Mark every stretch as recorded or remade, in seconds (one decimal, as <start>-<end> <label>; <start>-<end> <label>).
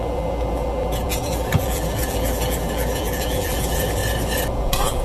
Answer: 0.0-4.0 remade; 4.0-4.6 recorded; 4.6-5.0 remade